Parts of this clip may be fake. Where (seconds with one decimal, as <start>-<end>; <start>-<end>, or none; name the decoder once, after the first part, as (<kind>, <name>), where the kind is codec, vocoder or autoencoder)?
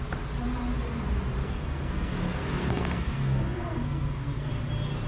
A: 1.4-4.5 (codec, SNAC)